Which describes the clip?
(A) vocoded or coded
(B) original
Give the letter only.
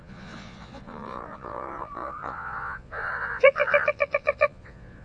A